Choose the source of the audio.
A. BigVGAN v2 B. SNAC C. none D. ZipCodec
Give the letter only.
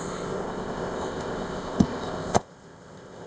D